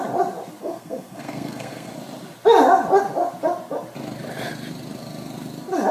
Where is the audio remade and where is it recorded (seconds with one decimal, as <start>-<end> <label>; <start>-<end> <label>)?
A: 0.0-0.6 recorded; 0.6-1.9 remade; 1.9-5.9 recorded